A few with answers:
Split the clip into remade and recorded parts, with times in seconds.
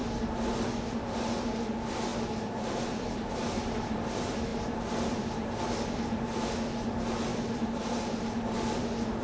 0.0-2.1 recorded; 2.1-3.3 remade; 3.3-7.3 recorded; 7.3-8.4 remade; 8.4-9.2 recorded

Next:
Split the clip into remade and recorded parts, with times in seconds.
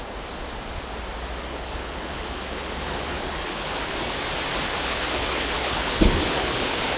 0.0-1.5 recorded; 1.5-4.1 remade; 4.1-4.7 recorded; 4.7-7.0 remade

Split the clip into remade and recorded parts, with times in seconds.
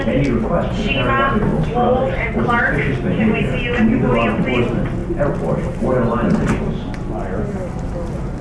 0.0-8.4 recorded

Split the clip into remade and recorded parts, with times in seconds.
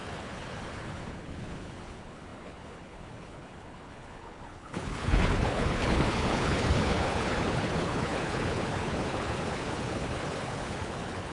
0.0-11.3 remade